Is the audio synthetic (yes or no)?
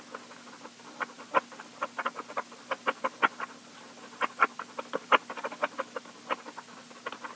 no